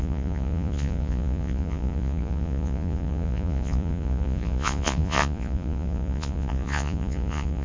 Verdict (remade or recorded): remade